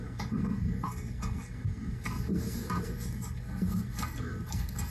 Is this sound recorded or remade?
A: remade